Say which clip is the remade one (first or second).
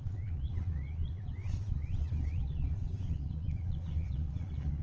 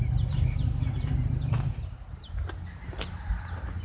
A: first